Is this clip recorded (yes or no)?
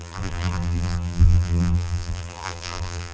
no